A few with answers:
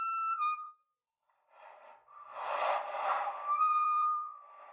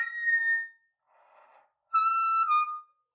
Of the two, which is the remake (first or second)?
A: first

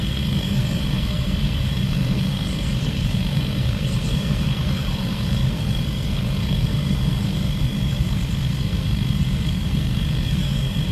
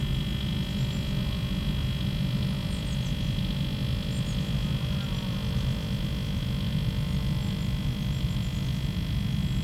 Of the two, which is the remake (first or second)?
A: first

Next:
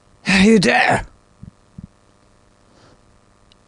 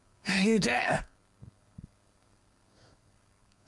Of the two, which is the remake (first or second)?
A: second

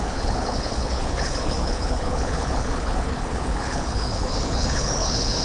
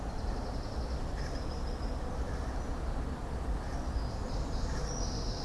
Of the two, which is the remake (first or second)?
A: first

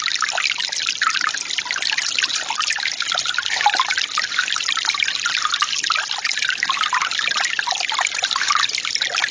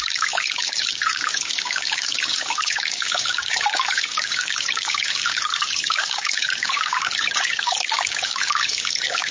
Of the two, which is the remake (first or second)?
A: second